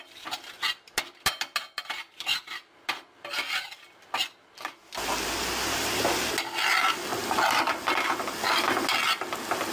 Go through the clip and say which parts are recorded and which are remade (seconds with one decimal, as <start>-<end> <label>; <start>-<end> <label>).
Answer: 0.0-9.7 recorded